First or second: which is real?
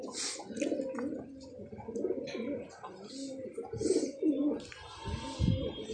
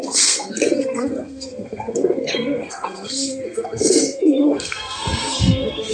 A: first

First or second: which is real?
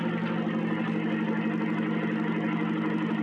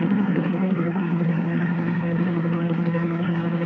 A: first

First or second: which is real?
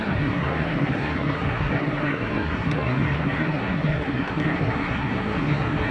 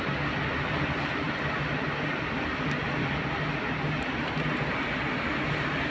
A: second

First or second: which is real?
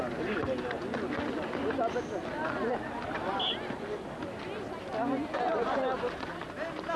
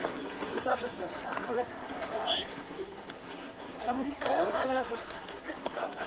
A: first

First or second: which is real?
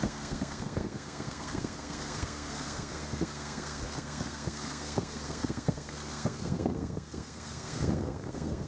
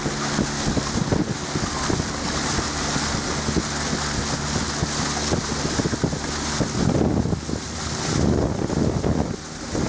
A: second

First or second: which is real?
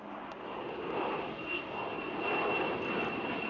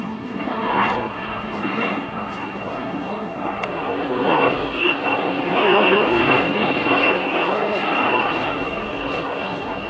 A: first